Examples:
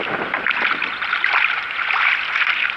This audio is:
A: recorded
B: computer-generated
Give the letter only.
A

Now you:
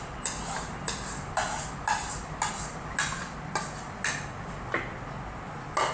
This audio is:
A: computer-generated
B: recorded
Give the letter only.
B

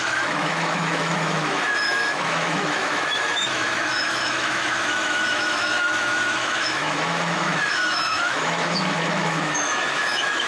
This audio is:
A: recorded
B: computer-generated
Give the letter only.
B